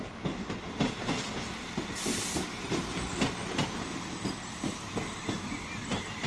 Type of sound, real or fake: real